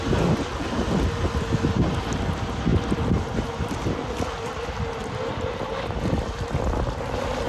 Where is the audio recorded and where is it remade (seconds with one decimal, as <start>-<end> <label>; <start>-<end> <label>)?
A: 0.0-7.5 recorded